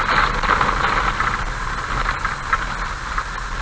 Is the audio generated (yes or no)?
no